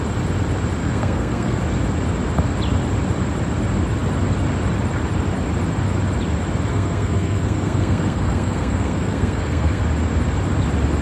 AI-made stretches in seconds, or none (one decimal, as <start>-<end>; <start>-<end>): 0.8-1.6; 6.7-9.8